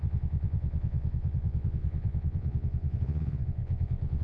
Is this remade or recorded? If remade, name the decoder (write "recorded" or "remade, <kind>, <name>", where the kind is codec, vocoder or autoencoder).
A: remade, vocoder, Vocos